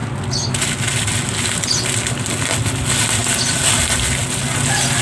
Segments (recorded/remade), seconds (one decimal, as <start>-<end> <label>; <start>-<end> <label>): 0.0-5.0 recorded

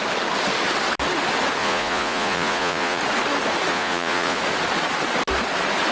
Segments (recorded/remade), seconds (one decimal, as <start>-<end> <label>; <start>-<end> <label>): 0.0-1.6 recorded; 1.6-3.0 remade; 3.0-3.7 recorded; 3.7-4.4 remade; 4.4-5.9 recorded

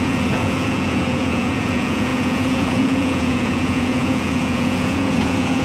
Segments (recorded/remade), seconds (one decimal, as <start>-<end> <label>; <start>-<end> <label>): 0.0-5.6 remade